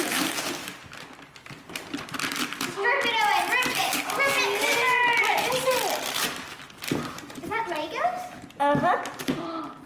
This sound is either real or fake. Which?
real